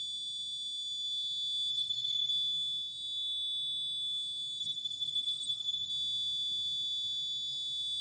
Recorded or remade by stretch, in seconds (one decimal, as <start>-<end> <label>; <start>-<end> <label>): 0.0-1.7 recorded; 1.7-2.3 remade; 2.3-4.6 recorded; 4.6-5.9 remade; 5.9-8.0 recorded